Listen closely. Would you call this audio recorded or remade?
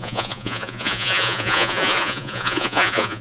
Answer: remade